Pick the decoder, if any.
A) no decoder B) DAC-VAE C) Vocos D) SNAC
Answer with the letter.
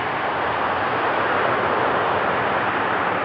A